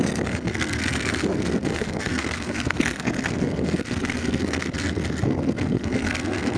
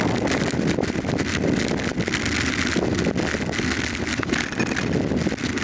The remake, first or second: first